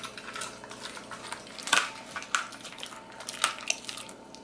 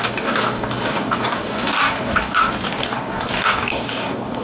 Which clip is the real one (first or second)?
first